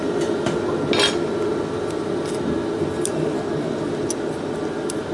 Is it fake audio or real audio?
real